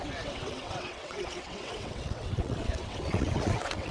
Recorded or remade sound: remade